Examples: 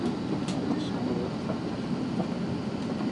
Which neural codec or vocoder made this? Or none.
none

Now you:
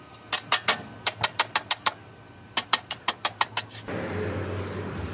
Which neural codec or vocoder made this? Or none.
none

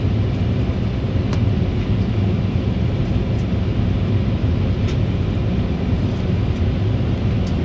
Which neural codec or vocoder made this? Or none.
none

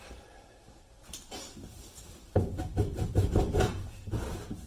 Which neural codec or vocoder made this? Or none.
vocoder, BigVGAN v2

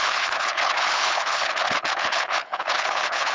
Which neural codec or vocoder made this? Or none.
codec, HILCodec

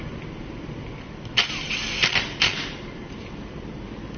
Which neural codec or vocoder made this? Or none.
none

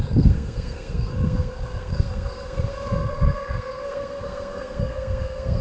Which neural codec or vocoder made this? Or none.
codec, SNAC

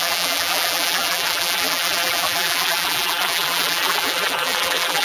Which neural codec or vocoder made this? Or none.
vocoder, BigVGAN v2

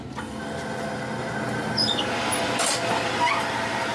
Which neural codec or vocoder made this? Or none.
none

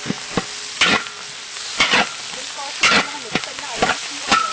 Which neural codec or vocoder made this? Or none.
none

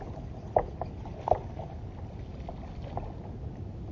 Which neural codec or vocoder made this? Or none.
none